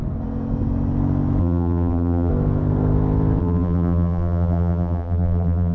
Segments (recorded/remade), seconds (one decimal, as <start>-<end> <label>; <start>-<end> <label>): 0.0-1.4 recorded; 1.4-2.3 remade; 2.3-3.4 recorded; 3.4-5.7 remade

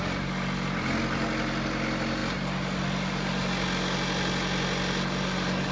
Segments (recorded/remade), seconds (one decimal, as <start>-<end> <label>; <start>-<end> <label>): 0.0-5.7 recorded

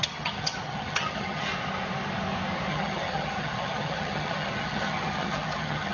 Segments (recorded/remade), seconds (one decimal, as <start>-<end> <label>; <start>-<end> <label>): 0.0-1.5 remade; 1.5-2.7 recorded; 2.7-5.9 remade

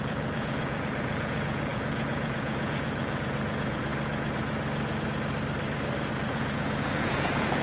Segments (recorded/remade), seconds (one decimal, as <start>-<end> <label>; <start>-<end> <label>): 0.0-3.9 remade; 3.9-6.1 recorded; 6.1-7.6 remade

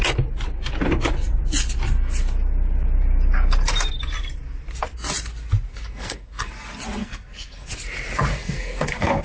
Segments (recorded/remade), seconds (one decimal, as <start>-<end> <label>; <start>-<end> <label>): 0.0-5.7 recorded; 5.7-6.5 remade; 6.5-7.0 recorded; 7.0-7.7 remade; 7.7-8.3 recorded; 8.3-9.2 remade

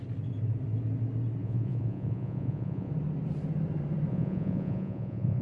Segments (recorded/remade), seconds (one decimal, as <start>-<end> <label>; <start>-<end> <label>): 0.0-1.4 recorded; 1.4-2.9 remade; 2.9-4.1 recorded; 4.1-5.4 remade

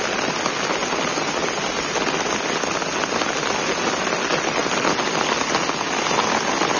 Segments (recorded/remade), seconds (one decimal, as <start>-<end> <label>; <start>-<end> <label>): 0.0-6.8 recorded

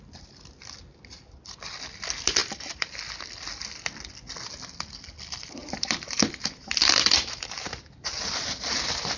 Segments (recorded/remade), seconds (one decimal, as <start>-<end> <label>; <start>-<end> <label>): 0.0-2.4 recorded; 2.4-2.9 remade; 2.9-5.6 recorded; 5.6-8.1 remade; 8.1-9.2 recorded